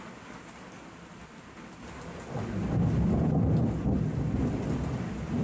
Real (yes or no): yes